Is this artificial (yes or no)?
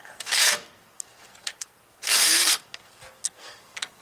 yes